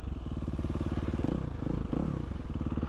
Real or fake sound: real